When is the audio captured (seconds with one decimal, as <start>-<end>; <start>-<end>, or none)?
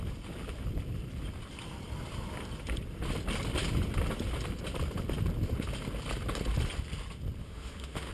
0.0-7.4